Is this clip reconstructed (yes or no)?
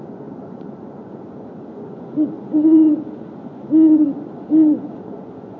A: yes